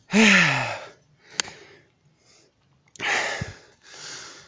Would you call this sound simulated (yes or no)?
no